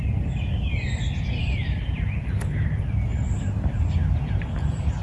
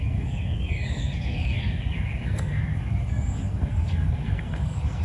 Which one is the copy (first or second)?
second